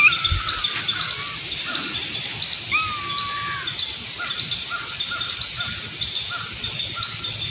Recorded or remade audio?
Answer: recorded